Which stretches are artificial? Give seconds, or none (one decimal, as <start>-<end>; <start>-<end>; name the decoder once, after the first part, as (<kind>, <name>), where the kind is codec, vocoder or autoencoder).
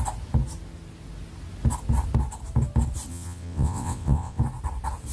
3.1-4.4 (vocoder, WaveNeXt)